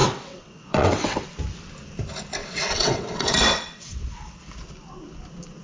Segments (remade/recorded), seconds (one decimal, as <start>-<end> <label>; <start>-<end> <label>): 0.0-1.2 remade; 1.2-2.4 recorded; 2.4-4.4 remade; 4.4-5.6 recorded